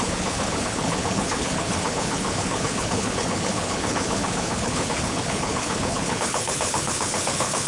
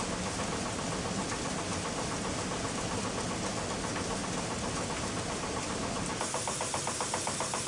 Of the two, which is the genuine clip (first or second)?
second